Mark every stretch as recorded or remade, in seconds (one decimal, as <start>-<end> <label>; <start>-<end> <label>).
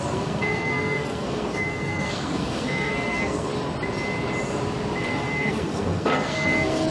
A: 0.0-3.5 remade; 3.5-5.0 recorded; 5.0-6.9 remade